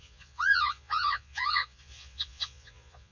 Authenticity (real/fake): fake